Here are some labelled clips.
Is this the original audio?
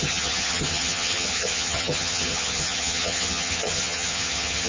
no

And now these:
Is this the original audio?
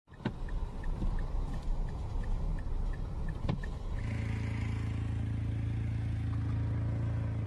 yes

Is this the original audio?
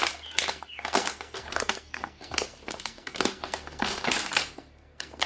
no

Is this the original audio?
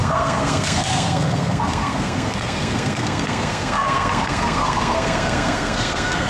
no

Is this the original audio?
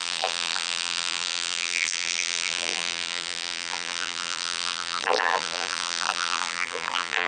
no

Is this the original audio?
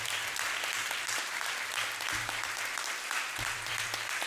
no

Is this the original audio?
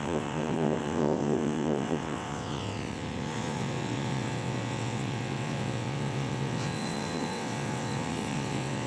no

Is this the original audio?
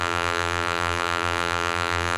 no